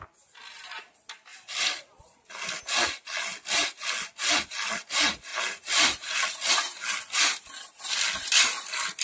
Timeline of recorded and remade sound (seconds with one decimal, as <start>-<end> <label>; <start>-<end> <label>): 0.0-1.3 recorded; 1.3-2.6 remade; 2.6-5.3 recorded; 5.3-6.5 remade; 6.5-9.0 recorded